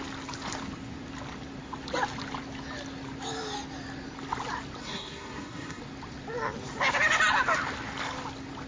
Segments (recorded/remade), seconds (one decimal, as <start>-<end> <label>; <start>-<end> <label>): 0.0-4.8 recorded; 4.8-5.8 remade; 5.8-8.7 recorded